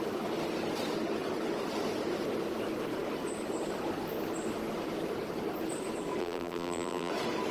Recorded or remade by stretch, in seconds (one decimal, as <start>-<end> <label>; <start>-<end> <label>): 0.0-6.2 recorded; 6.2-7.1 remade; 7.1-7.5 recorded